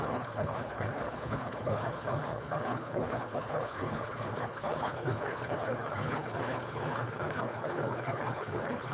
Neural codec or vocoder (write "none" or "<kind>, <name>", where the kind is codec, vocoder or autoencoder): codec, HILCodec